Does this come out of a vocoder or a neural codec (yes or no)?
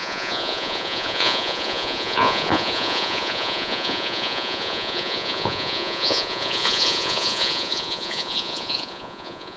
yes